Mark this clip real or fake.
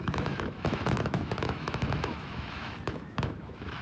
fake